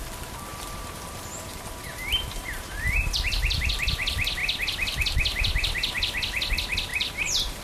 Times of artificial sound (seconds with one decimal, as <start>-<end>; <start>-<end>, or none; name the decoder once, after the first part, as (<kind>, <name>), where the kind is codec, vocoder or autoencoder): 0.5-3.7 (vocoder, BigVGAN v2); 6.9-7.6